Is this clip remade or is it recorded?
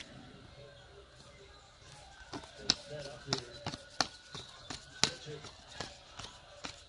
recorded